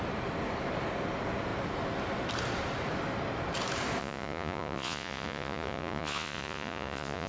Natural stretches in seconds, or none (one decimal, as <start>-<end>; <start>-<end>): 0.0-4.0